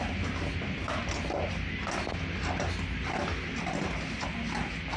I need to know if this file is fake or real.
real